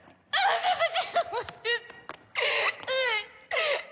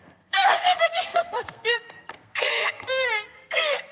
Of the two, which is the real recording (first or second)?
first